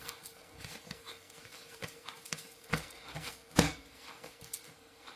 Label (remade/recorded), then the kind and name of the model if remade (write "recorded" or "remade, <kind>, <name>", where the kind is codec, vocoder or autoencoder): remade, codec, SNAC